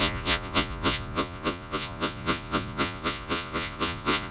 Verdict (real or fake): fake